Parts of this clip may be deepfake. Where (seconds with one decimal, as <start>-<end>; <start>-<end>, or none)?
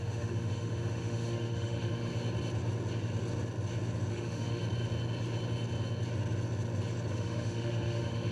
0.0-2.1; 4.1-4.6; 7.1-8.3